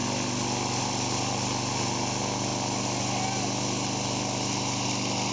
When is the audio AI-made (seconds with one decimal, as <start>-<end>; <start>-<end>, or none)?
none